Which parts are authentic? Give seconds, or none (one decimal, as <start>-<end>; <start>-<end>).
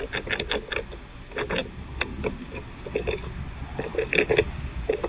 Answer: 0.0-5.1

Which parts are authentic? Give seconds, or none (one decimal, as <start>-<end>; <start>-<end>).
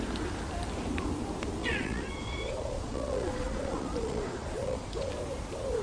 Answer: 0.0-1.6; 5.1-5.8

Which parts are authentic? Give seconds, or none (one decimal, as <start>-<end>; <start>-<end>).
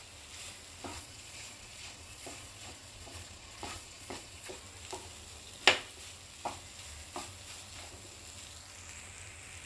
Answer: 0.0-0.9; 4.6-9.7